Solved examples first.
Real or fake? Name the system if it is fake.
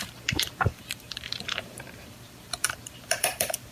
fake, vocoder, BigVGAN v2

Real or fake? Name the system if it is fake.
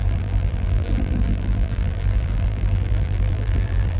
fake, vocoder, BigVGAN v2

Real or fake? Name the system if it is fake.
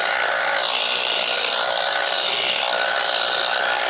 real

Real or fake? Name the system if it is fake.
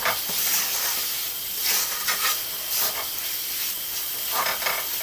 real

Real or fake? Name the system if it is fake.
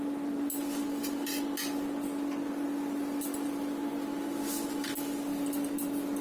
real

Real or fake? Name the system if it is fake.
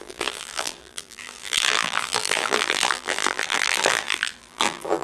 fake, vocoder, BigVGAN v2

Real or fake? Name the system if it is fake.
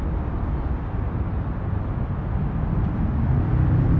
real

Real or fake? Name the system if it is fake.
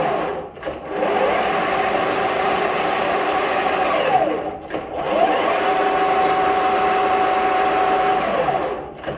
real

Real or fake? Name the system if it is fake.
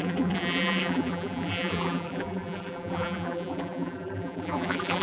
fake, vocoder, BigVGAN v2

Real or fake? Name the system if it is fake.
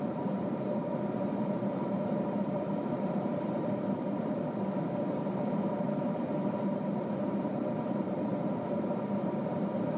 fake, vocoder, BigVGAN v2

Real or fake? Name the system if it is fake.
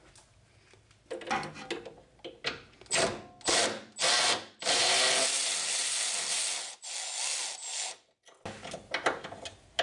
real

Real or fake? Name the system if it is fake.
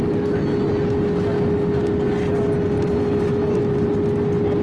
real